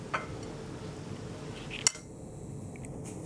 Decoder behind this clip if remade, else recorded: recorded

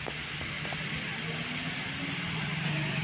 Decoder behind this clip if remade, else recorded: recorded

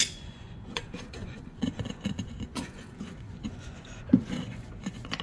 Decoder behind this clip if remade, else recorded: remade, vocoder, Vocos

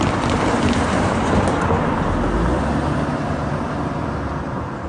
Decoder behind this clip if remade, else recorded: recorded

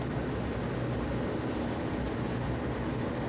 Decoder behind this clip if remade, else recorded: recorded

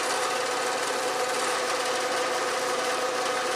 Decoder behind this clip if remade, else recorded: recorded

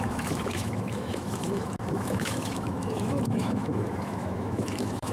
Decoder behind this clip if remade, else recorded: remade, autoencoder, DAC-VAE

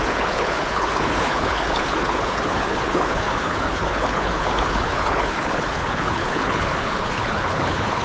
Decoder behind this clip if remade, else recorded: remade, codec, HILCodec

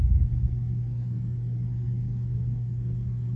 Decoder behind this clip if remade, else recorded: remade, codec, SNAC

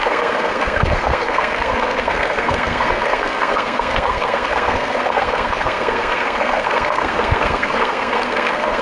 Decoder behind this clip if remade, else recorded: remade, codec, SNAC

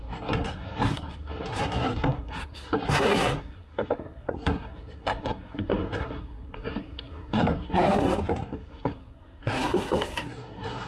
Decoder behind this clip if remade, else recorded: remade, codec, SNAC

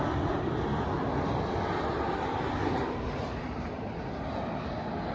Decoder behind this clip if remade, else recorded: recorded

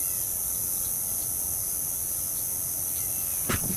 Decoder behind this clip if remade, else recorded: recorded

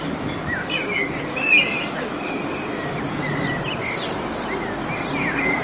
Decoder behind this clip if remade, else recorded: recorded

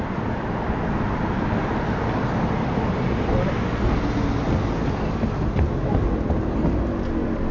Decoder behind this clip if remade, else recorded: recorded